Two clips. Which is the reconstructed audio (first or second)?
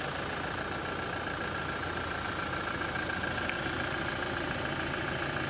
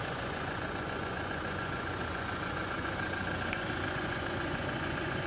second